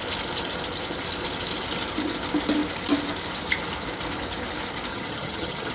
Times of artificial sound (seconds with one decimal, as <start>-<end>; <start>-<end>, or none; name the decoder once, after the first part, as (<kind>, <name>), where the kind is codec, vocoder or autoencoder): 4.9-5.7 (vocoder, HiFi-GAN)